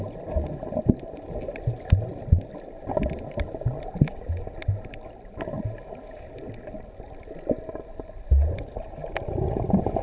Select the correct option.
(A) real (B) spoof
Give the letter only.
A